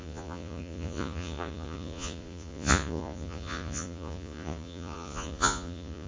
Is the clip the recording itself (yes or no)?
no